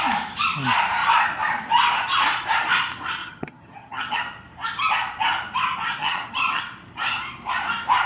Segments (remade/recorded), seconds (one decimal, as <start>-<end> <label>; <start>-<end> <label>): 0.0-3.2 recorded; 3.2-4.2 remade; 4.2-6.0 recorded; 6.0-6.6 remade; 6.6-8.1 recorded

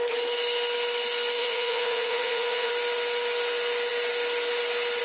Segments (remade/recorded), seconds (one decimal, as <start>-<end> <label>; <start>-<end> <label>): 0.0-1.4 recorded; 1.4-2.7 remade; 2.7-5.0 recorded

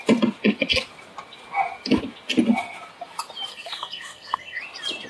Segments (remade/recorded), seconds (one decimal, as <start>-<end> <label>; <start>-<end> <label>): 0.0-3.5 recorded; 3.5-4.6 remade; 4.6-5.1 recorded

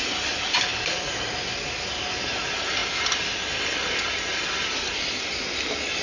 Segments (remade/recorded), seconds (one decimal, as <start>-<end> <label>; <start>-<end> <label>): 0.0-2.8 recorded; 2.8-5.6 remade; 5.6-6.0 recorded

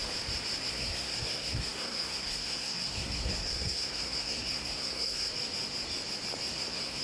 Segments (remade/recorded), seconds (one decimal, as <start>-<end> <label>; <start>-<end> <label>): 0.0-0.7 recorded; 0.7-5.3 remade; 5.3-6.5 recorded; 6.5-7.0 remade